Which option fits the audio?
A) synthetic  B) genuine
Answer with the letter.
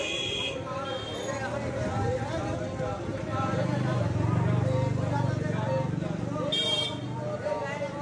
B